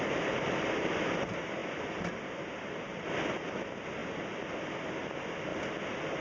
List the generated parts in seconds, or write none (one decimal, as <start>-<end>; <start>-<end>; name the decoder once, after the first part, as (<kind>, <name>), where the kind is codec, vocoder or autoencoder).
none